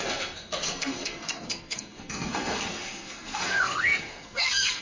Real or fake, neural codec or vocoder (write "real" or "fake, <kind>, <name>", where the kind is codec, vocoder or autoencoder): fake, codec, SNAC